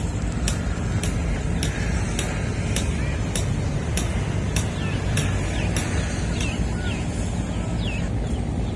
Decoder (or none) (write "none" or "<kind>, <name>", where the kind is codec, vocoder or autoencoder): none